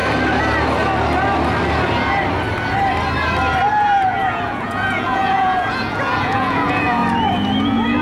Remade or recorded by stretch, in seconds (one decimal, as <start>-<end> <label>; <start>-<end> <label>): 0.0-3.7 recorded; 3.7-7.0 remade; 7.0-7.6 recorded; 7.6-8.0 remade

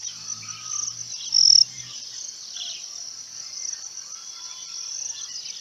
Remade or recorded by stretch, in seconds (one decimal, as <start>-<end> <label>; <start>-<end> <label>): 0.0-1.4 recorded; 1.4-2.8 remade; 2.8-5.6 recorded

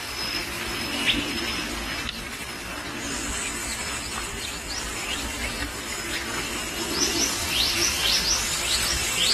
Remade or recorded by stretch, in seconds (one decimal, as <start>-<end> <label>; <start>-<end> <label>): 0.0-7.4 recorded; 7.4-8.3 remade; 8.3-9.3 recorded

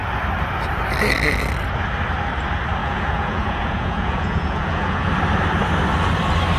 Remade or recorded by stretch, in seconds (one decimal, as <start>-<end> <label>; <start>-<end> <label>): 0.0-2.8 recorded; 2.8-5.1 remade; 5.1-6.6 recorded

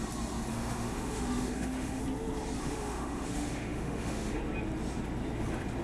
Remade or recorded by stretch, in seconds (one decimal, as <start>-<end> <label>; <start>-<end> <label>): 0.0-0.5 recorded; 0.5-2.0 remade; 2.0-2.6 recorded; 2.6-4.4 remade; 4.4-5.8 recorded

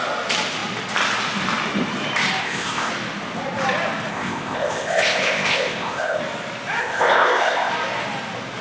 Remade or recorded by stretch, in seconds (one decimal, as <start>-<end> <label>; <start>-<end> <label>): 0.0-2.4 recorded; 2.4-2.9 remade; 2.9-4.1 recorded; 4.1-6.2 remade; 6.2-6.8 recorded; 6.8-7.7 remade; 7.7-8.6 recorded

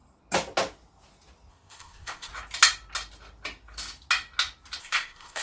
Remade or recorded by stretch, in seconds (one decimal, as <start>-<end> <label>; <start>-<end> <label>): 0.0-1.5 recorded; 1.5-2.3 remade; 2.3-4.8 recorded; 4.8-5.4 remade

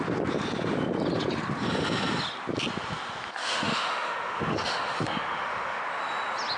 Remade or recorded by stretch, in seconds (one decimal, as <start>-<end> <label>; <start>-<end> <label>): 0.0-3.4 recorded; 3.4-5.8 remade; 5.8-6.6 recorded